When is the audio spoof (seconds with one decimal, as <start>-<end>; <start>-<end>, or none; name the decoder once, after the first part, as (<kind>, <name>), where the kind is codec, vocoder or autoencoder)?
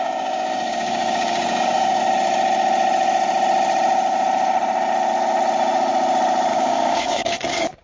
0.0-2.0 (codec, DAC); 6.5-7.8